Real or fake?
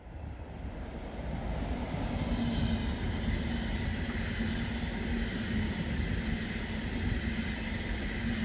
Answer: real